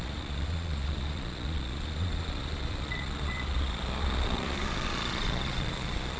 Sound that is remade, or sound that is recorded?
remade